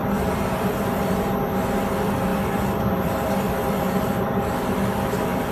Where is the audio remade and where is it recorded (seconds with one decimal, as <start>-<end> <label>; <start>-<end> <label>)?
0.0-5.5 recorded